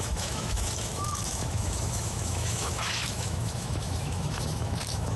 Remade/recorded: remade